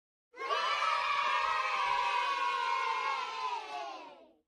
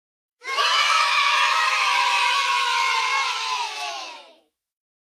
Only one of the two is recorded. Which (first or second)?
first